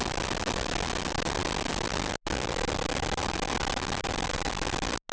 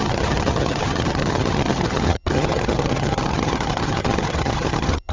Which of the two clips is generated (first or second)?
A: second